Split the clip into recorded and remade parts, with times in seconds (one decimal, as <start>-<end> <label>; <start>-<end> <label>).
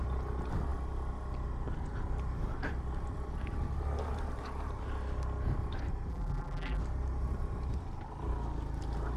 0.0-6.1 recorded; 6.1-6.8 remade; 6.8-9.2 recorded